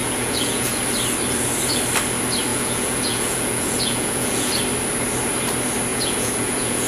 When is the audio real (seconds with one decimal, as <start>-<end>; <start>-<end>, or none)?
0.8-2.5; 4.5-5.9